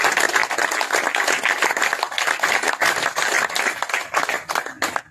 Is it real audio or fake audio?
real